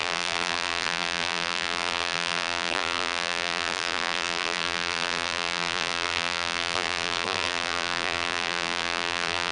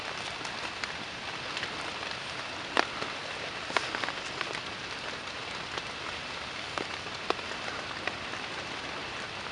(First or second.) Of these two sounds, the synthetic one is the first